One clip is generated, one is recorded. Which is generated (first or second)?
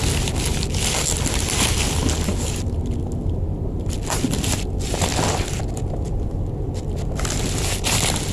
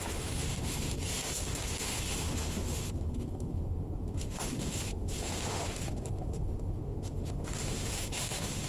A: second